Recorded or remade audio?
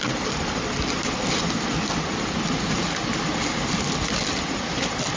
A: recorded